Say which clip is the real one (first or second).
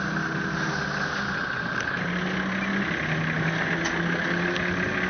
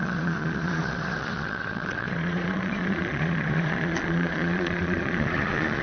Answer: first